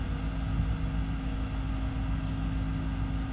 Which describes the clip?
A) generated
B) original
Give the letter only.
B